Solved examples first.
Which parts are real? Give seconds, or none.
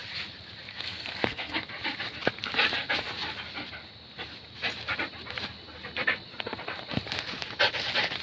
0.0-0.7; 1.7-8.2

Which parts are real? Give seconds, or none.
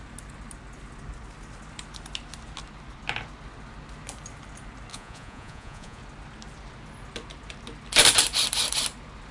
0.0-4.9; 6.0-9.3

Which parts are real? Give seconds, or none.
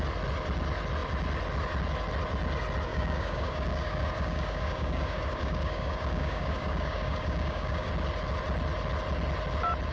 0.0-2.9; 7.9-9.9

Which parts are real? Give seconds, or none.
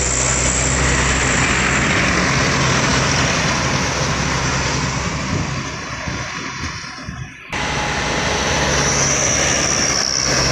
0.0-10.5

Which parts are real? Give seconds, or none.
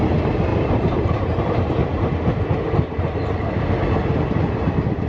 0.0-0.5; 1.6-5.1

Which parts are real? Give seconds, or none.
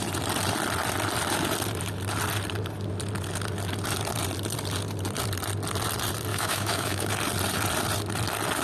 0.0-6.3; 7.1-8.6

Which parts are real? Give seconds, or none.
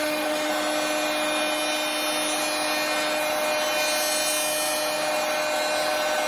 0.5-6.3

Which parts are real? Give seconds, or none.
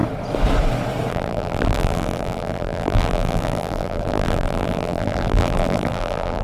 0.0-1.1